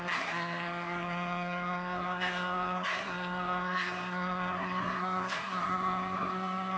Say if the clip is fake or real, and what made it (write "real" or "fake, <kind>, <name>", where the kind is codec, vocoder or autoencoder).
fake, codec, SNAC